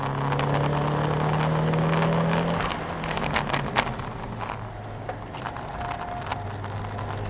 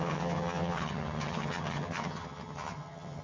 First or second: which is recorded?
first